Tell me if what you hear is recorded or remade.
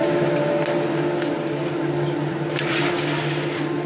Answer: recorded